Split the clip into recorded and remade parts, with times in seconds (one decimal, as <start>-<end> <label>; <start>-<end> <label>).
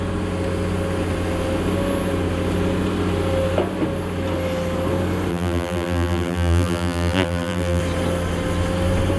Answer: 0.0-5.3 recorded; 5.3-7.8 remade; 7.8-9.2 recorded